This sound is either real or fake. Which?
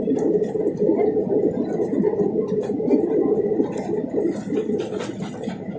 real